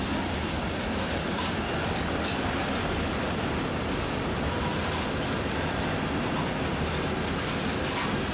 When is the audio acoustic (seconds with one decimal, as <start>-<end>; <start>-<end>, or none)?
0.0-8.3